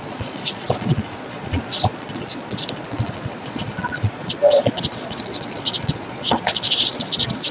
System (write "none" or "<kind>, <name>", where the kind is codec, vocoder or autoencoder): vocoder, Vocos